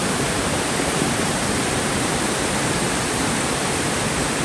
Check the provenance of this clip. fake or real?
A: fake